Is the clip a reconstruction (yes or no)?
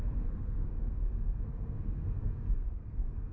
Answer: yes